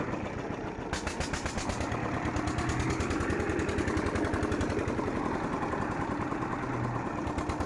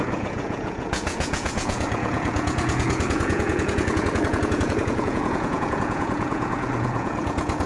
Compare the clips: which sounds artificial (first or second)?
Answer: second